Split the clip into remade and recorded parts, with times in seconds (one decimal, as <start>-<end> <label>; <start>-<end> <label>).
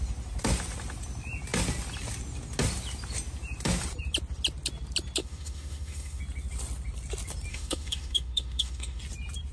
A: 0.0-5.2 recorded; 5.2-6.2 remade; 6.2-7.5 recorded; 7.5-9.0 remade; 9.0-9.5 recorded